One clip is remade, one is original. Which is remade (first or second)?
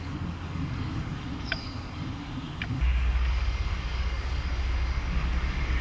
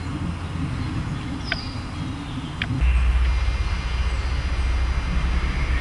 first